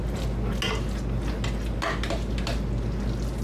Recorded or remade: recorded